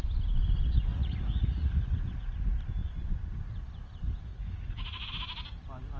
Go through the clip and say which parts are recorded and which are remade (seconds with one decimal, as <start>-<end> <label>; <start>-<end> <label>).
0.0-0.9 recorded; 0.9-2.3 remade; 2.3-4.3 recorded; 4.3-5.1 remade; 5.1-6.0 recorded